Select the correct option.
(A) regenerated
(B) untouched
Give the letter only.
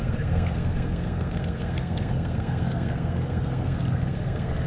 A